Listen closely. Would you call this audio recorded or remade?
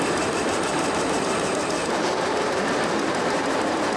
remade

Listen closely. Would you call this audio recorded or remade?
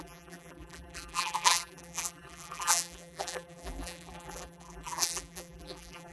remade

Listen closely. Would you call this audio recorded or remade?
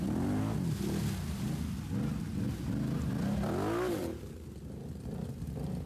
recorded